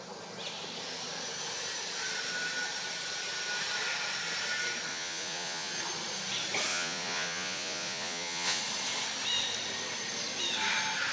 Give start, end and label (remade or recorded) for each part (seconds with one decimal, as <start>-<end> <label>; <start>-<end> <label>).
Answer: 0.0-4.9 recorded; 4.9-5.7 remade; 5.7-6.7 recorded; 6.7-8.6 remade; 8.6-11.1 recorded